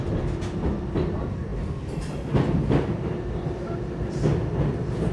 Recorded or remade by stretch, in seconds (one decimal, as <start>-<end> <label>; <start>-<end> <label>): 0.0-5.1 recorded